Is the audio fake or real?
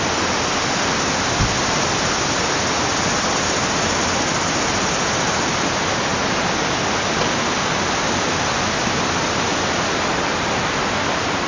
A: real